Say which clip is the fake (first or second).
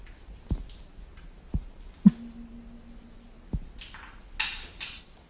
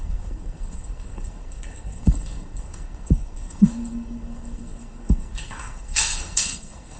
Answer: second